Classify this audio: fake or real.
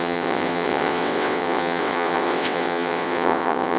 fake